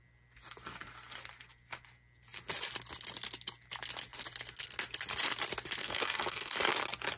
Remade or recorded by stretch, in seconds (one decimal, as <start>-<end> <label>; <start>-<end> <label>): 0.0-5.8 recorded; 5.8-6.5 remade; 6.5-7.2 recorded